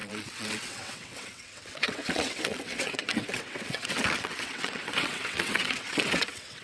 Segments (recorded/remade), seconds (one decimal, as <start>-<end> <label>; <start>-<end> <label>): 0.0-6.6 remade